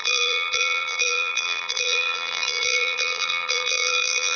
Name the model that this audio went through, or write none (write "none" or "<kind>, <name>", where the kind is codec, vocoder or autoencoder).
vocoder, BigVGAN v2